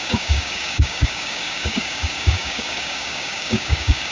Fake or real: fake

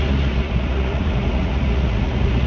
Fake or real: fake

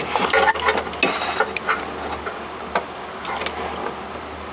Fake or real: real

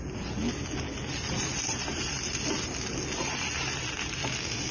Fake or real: real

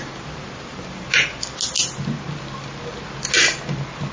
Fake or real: real